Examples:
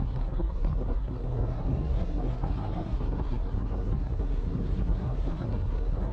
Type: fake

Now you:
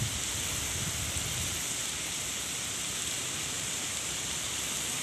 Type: fake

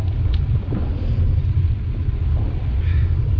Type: real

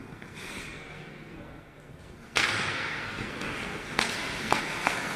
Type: fake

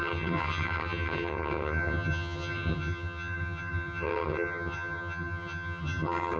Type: fake